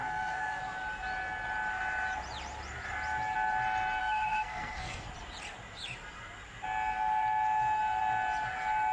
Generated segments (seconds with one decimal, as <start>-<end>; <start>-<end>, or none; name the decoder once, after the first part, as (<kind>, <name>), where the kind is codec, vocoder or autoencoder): 0.0-0.6 (codec, SNAC); 4.0-5.1